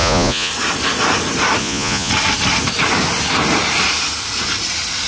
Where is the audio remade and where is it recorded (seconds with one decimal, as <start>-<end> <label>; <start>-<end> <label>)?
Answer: 0.0-0.5 remade; 0.5-1.6 recorded; 1.6-2.1 remade; 2.1-5.1 recorded